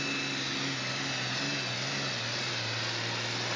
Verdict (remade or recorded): recorded